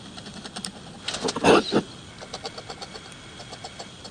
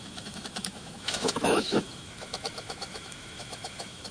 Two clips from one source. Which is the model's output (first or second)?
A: second